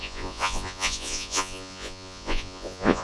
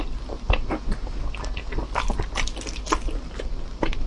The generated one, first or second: first